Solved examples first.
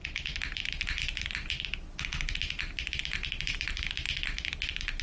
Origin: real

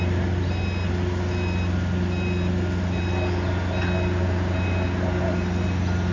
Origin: real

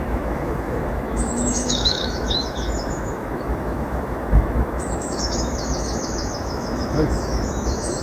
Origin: fake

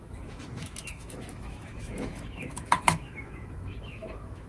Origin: fake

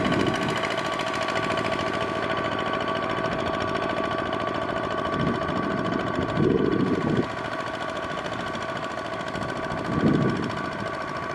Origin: real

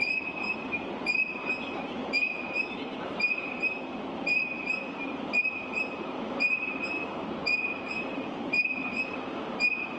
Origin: fake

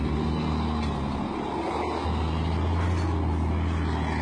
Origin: real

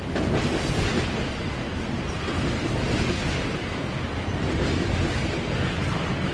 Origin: real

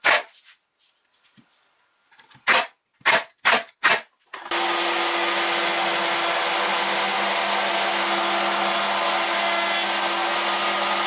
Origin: real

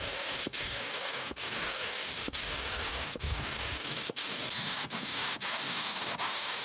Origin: fake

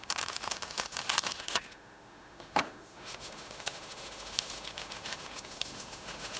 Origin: fake